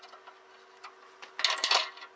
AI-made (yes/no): no